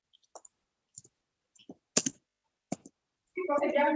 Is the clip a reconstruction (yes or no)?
no